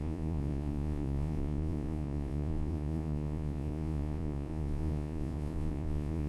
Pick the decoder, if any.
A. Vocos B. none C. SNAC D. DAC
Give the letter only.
A